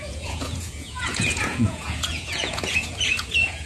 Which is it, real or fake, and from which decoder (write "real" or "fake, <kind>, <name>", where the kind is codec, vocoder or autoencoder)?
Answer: fake, vocoder, Vocos